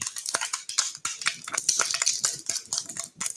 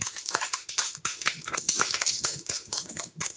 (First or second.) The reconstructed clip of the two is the second